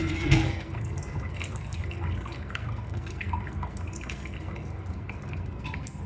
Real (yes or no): no